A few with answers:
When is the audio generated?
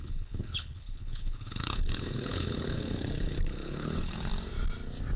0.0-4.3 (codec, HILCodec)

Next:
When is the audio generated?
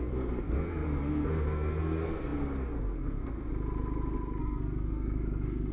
0.0-3.5 (codec, SNAC); 4.4-5.7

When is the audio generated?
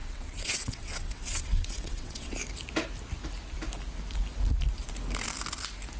0.0-2.4 (vocoder, WaveNeXt)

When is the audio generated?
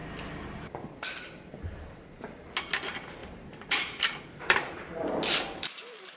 3.2-6.2 (vocoder, BigVGAN v2)